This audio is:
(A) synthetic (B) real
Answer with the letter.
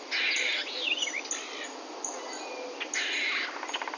B